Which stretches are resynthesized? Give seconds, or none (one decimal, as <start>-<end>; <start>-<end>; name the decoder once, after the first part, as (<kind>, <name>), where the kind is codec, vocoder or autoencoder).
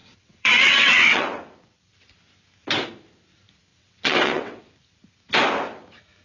0.0-1.4 (vocoder, WaveNeXt); 3.7-4.6